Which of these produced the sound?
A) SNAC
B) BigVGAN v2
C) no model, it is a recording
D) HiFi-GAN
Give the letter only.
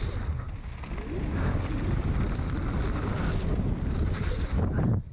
C